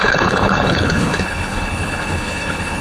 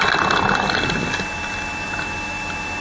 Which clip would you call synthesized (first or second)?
first